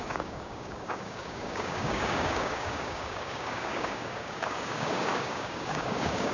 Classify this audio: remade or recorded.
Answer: remade